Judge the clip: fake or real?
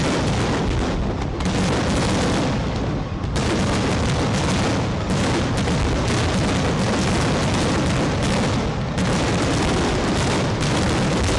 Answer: real